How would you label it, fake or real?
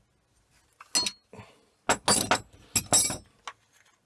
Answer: real